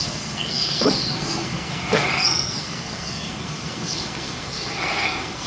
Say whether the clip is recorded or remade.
remade